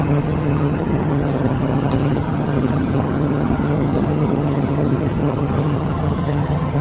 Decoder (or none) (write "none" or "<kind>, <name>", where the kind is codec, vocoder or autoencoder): vocoder, HiFi-GAN